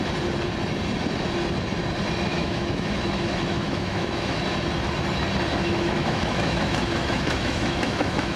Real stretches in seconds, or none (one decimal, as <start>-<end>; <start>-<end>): 0.0-2.3; 4.4-5.6